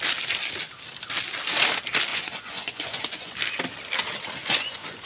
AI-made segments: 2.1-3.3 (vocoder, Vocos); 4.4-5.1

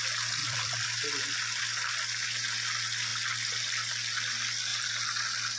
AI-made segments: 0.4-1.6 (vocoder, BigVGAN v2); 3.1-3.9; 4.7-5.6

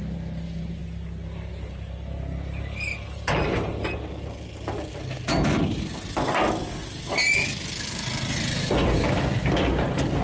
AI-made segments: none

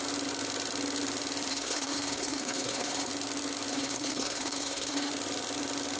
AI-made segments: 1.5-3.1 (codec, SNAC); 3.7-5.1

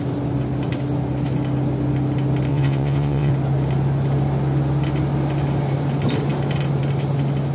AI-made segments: 2.5-3.3 (vocoder, WaveNeXt)

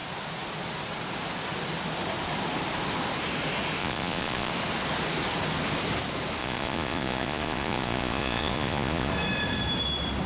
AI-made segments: 3.8-4.5 (vocoder, Vocos); 6.4-9.1

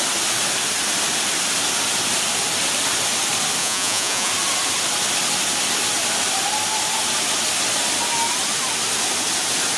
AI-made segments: 3.6-4.3 (vocoder, Vocos)